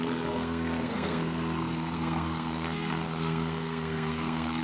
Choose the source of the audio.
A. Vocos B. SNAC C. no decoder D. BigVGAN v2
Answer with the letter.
B